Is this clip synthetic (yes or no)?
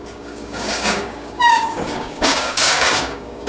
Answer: yes